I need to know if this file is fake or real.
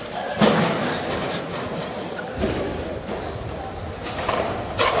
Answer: real